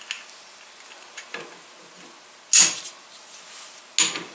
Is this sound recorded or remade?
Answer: recorded